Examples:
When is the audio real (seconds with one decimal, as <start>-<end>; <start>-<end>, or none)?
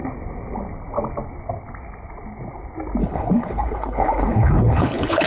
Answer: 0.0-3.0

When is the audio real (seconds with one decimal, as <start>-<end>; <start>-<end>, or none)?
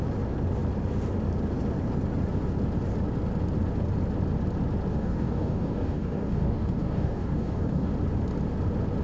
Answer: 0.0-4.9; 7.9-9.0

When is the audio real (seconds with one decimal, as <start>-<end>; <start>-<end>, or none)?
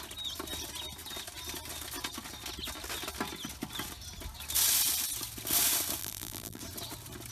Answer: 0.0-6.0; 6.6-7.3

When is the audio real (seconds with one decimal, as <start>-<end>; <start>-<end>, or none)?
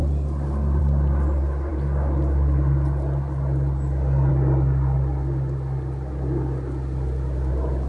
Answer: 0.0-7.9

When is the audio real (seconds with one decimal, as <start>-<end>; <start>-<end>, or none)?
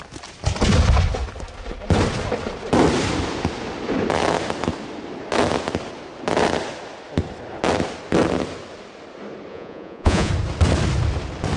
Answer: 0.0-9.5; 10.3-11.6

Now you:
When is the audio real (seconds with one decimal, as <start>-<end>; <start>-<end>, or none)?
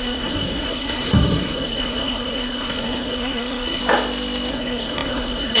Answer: 3.8-4.5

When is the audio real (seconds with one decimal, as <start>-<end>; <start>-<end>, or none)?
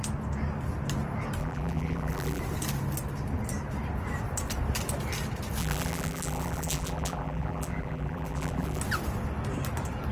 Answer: 0.0-1.4; 2.4-5.6; 8.8-10.1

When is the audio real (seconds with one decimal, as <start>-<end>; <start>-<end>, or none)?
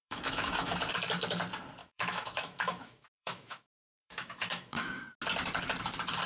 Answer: 0.9-1.8; 5.0-6.3